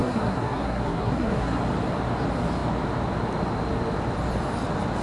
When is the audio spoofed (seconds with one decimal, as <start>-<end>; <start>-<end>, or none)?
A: 0.0-1.6